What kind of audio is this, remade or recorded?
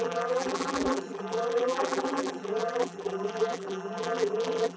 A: remade